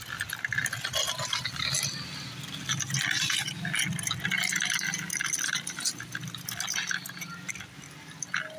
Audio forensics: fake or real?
real